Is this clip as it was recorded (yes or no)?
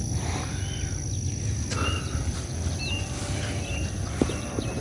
yes